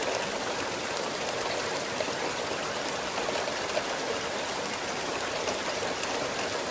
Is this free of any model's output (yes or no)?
yes